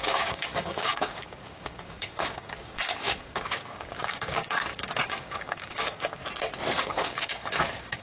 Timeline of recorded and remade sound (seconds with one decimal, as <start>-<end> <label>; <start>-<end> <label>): 0.0-6.2 remade; 6.2-6.8 recorded; 6.8-8.0 remade